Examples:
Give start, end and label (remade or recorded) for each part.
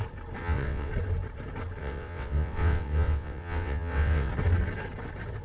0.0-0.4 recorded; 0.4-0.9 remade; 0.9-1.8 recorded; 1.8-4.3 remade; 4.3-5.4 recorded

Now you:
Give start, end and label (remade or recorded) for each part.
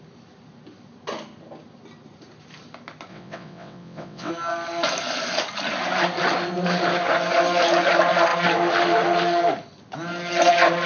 0.0-3.1 recorded; 3.1-4.3 remade; 4.3-10.9 recorded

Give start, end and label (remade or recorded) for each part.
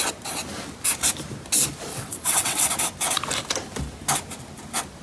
0.0-1.9 recorded; 1.9-2.7 remade; 2.7-5.0 recorded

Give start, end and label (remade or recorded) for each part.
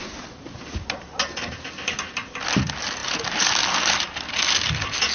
0.0-5.1 recorded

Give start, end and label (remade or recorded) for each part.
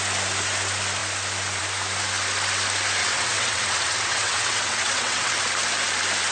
0.0-3.0 recorded; 3.0-5.4 remade; 5.4-6.3 recorded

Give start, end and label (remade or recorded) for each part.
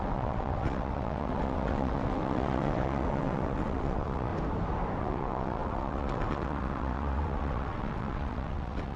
0.0-4.3 remade; 4.3-5.0 recorded; 5.0-9.0 remade